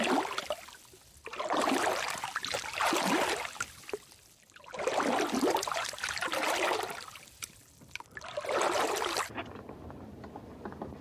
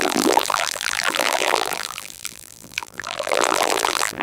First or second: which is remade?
second